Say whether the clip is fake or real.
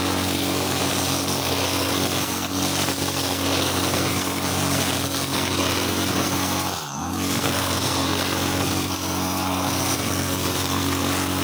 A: fake